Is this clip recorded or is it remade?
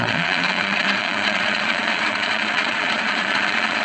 remade